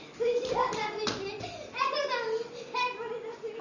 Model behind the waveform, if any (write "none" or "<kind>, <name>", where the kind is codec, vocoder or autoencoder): none